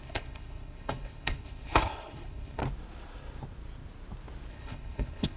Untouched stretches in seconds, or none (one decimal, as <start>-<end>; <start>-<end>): 2.6-4.5